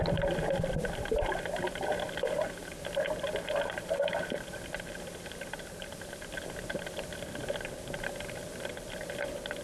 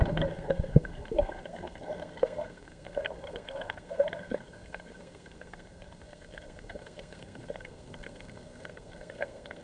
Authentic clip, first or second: first